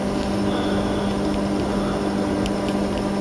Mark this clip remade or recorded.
recorded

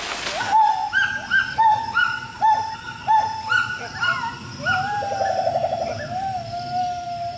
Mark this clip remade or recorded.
recorded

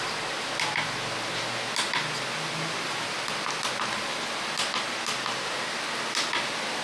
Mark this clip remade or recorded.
recorded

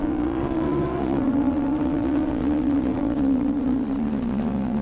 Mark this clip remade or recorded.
remade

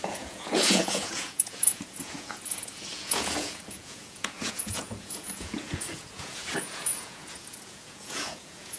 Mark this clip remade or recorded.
remade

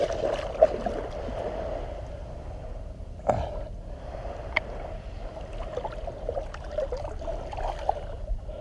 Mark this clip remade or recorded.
recorded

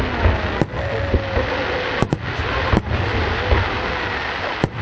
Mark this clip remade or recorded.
recorded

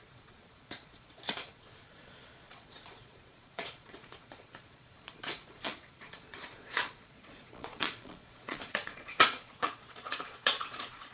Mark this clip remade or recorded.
remade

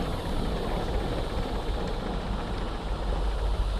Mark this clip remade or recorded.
recorded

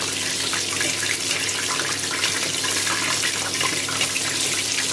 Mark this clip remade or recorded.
recorded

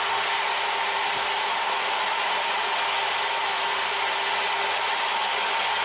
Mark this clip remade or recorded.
recorded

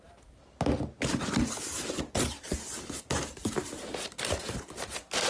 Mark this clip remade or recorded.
recorded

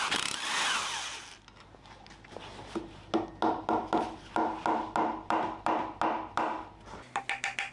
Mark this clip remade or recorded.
recorded